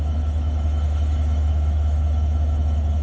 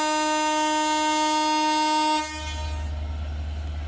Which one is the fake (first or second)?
first